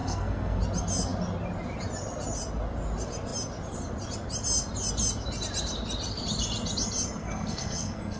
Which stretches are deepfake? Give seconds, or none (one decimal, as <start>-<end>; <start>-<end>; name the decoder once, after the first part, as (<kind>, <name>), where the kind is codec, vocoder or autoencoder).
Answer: 0.0-0.6 (codec, SNAC); 7.2-8.2